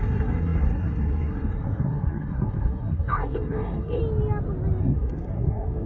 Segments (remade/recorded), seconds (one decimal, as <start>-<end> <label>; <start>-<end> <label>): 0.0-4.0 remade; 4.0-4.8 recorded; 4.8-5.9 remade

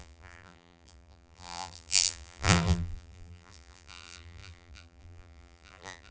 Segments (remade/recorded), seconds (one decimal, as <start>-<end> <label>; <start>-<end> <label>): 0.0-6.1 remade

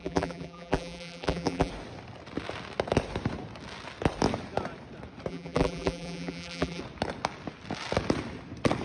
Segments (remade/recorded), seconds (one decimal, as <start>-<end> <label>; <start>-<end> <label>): 0.0-1.7 remade; 1.7-5.3 recorded; 5.3-6.8 remade; 6.8-8.8 recorded

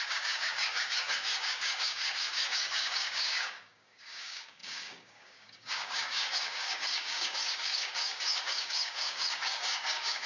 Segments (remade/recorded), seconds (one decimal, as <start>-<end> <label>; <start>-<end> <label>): 0.0-10.3 remade

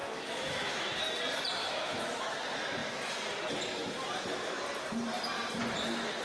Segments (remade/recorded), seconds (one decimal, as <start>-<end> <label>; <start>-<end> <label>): 0.0-1.0 remade; 1.0-1.6 recorded; 1.6-2.3 remade; 2.3-6.2 recorded